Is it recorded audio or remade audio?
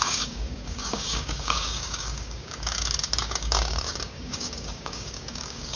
remade